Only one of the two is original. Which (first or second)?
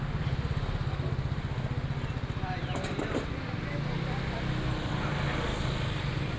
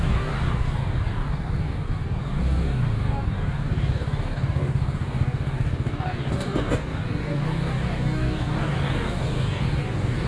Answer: first